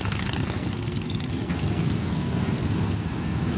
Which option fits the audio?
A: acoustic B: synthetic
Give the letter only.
B